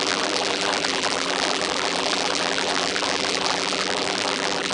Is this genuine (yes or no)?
no